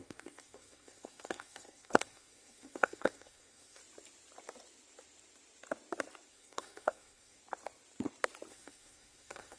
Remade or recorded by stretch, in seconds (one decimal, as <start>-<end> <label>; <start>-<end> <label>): 0.0-3.8 remade; 3.8-6.3 recorded; 6.3-7.4 remade; 7.4-8.5 recorded; 8.5-9.6 remade